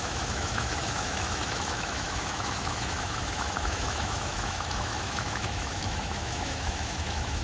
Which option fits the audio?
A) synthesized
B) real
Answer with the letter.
A